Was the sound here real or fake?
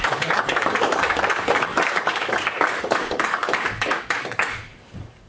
fake